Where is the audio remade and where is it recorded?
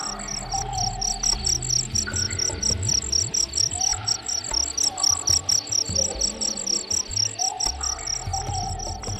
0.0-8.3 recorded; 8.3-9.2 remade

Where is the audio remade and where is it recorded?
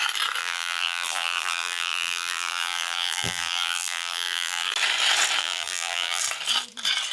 0.0-0.4 recorded; 0.4-4.7 remade; 4.7-5.4 recorded; 5.4-6.2 remade; 6.2-7.1 recorded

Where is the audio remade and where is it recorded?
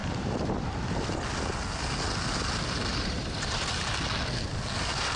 0.0-1.2 remade; 1.2-2.9 recorded; 2.9-3.8 remade; 3.8-5.2 recorded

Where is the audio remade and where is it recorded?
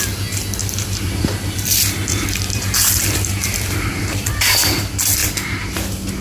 0.0-0.6 recorded; 0.6-4.3 remade; 4.3-6.2 recorded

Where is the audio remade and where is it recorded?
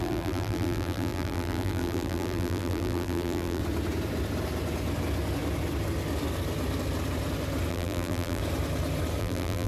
0.0-3.6 remade; 3.6-7.7 recorded; 7.7-8.4 remade; 8.4-9.2 recorded; 9.2-9.7 remade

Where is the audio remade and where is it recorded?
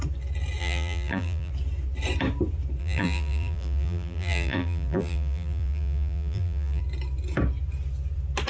0.0-0.6 recorded; 0.6-1.5 remade; 1.5-2.8 recorded; 2.8-6.8 remade; 6.8-8.5 recorded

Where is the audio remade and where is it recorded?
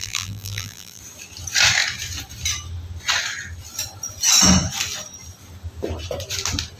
0.0-1.0 remade; 1.0-6.8 recorded